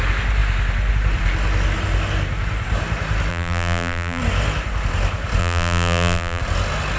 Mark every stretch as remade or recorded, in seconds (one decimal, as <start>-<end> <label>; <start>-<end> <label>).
0.0-3.3 recorded; 3.3-4.2 remade; 4.2-5.4 recorded; 5.4-6.4 remade; 6.4-7.0 recorded